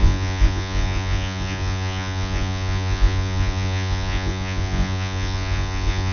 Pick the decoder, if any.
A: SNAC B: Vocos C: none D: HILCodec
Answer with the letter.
B